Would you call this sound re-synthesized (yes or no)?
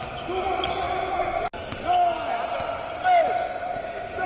no